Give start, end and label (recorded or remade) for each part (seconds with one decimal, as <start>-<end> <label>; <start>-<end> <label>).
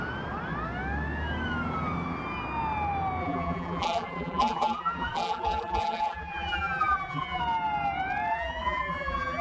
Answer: 0.0-3.2 recorded; 3.2-7.4 remade; 7.4-8.3 recorded; 8.3-9.4 remade